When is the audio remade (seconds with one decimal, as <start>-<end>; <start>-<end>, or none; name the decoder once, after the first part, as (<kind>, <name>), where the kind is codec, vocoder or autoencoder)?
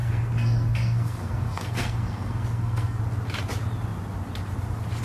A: 0.0-3.0 (codec, SNAC)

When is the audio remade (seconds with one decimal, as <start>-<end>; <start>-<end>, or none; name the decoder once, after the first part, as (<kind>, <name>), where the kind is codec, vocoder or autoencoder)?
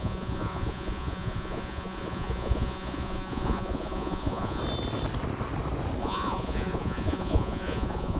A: 0.0-4.6 (vocoder, Vocos); 6.0-8.2